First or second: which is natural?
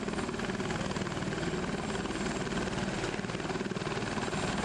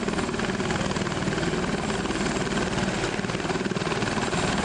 first